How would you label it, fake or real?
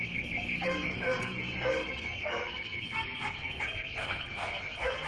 fake